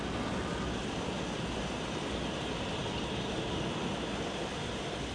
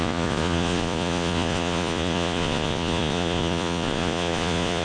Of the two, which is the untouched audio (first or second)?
first